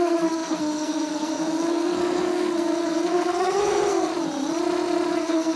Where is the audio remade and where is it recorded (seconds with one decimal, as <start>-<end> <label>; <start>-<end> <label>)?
0.0-4.1 remade; 4.1-5.1 recorded; 5.1-5.6 remade